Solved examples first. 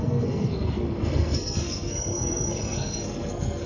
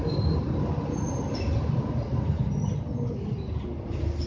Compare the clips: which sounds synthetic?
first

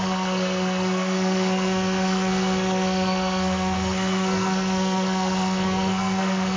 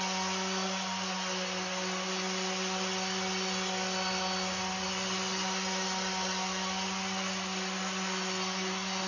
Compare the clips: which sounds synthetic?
first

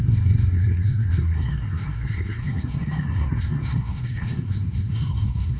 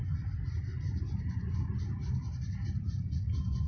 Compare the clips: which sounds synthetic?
first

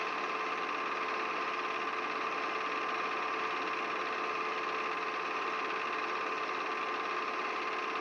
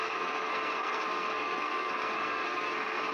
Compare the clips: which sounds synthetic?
second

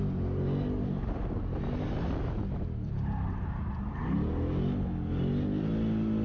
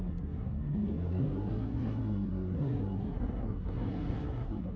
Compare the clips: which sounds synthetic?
second